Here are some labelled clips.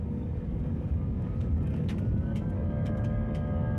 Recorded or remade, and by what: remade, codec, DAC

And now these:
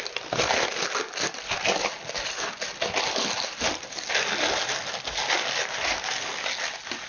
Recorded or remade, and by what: recorded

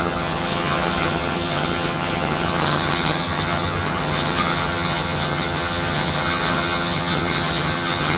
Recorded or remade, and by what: remade, vocoder, HiFi-GAN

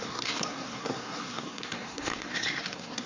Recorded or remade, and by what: remade, codec, SNAC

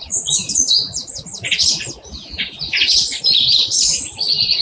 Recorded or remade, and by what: remade, vocoder, Vocos